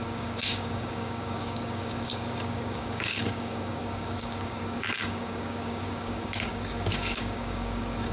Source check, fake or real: fake